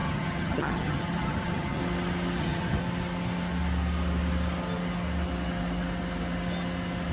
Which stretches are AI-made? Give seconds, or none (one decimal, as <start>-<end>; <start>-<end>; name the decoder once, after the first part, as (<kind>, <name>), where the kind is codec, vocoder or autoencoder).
0.0-1.8 (vocoder, HiFi-GAN); 2.4-2.8